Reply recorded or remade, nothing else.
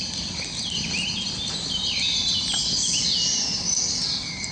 recorded